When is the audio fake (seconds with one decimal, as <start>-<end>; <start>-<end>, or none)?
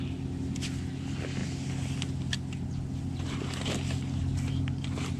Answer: none